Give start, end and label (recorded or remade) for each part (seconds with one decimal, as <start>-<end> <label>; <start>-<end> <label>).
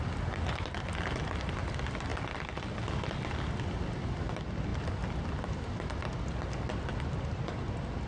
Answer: 0.0-8.1 recorded